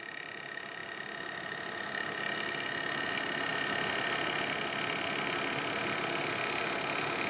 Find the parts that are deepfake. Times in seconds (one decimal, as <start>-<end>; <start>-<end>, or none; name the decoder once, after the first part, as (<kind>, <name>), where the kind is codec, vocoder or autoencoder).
none